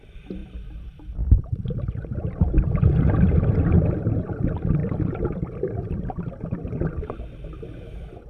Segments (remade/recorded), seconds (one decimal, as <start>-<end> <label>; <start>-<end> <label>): 0.0-0.4 recorded; 0.4-1.5 remade; 1.5-4.8 recorded; 4.8-6.6 remade; 6.6-8.3 recorded